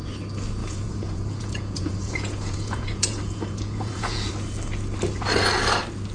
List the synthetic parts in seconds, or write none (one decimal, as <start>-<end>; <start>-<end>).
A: 0.6-4.3